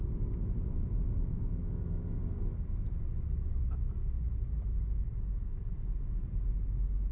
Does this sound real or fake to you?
real